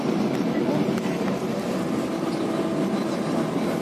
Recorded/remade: recorded